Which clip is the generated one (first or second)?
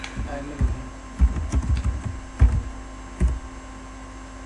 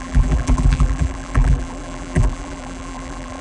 second